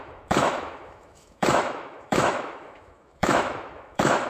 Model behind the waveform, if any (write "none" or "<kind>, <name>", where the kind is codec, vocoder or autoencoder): autoencoder, DAC-VAE